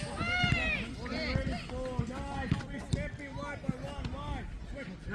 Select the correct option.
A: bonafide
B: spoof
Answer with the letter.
A